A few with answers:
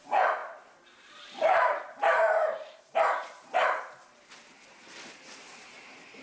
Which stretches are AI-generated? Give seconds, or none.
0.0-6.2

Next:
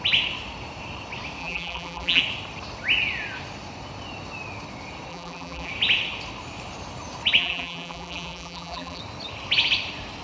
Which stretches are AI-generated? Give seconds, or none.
1.4-2.2; 5.1-5.7; 7.4-9.0

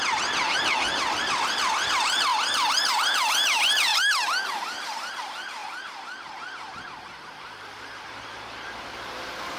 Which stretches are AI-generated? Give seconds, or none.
0.0-5.6; 6.8-9.6

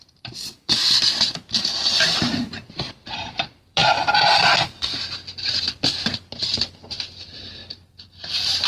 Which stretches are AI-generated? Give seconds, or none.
0.0-3.8; 5.6-8.7

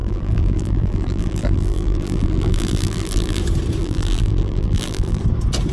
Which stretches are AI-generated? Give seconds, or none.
0.0-3.4; 3.8-5.2

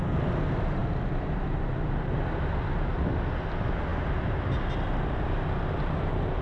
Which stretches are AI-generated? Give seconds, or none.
none

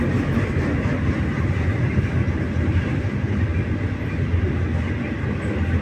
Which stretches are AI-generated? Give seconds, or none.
none

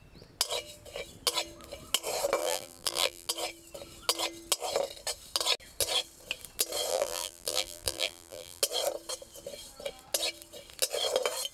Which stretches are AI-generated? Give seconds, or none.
2.4-3.3; 6.9-8.6